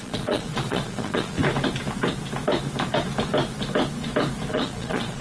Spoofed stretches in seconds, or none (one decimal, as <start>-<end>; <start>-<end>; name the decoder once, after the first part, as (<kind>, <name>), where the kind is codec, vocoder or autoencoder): 0.0-1.4 (vocoder, Vocos); 4.5-5.2